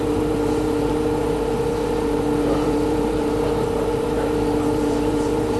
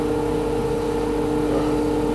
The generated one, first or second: first